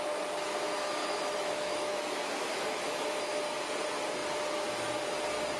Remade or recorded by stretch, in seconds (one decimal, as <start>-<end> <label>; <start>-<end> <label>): 0.0-1.0 recorded; 1.0-3.2 remade; 3.2-5.6 recorded

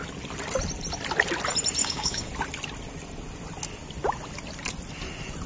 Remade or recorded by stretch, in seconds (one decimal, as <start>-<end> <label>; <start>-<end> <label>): 0.0-1.8 recorded; 1.8-2.3 remade; 2.3-5.5 recorded

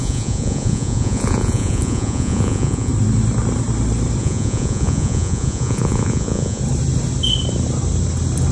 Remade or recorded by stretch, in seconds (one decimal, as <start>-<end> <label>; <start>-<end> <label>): 0.0-2.9 remade; 2.9-4.2 recorded; 4.2-6.6 remade; 6.6-8.5 recorded

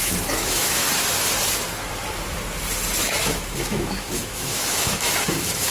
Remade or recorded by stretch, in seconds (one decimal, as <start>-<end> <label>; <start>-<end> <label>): 0.0-0.8 remade; 0.8-3.0 recorded; 3.0-5.7 remade

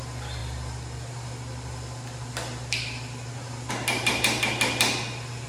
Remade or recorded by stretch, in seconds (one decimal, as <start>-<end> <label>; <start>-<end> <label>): 0.0-5.5 recorded

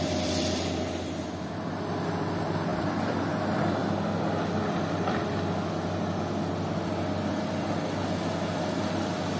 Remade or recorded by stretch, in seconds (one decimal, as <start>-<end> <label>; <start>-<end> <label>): 0.0-9.4 recorded

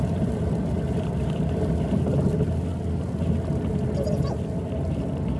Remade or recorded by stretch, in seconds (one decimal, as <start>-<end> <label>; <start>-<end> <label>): 0.0-5.4 recorded

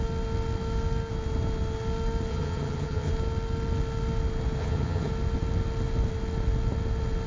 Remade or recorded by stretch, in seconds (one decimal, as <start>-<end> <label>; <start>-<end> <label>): 0.0-2.3 recorded; 2.3-3.1 remade; 3.1-4.6 recorded; 4.6-5.1 remade; 5.1-7.3 recorded